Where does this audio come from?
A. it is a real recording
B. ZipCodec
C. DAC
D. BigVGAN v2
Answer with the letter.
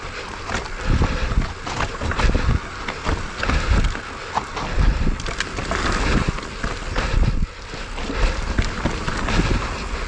A